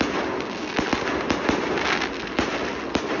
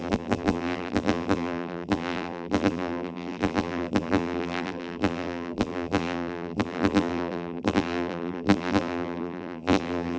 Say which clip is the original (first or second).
first